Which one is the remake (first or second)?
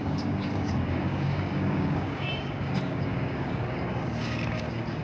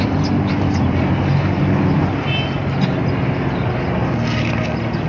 first